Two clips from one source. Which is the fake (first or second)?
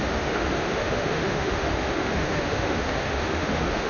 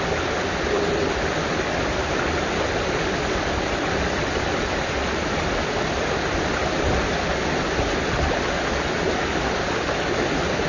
first